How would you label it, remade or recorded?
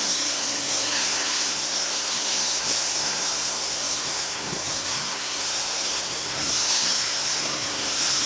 remade